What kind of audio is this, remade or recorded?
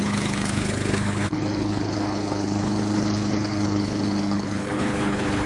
remade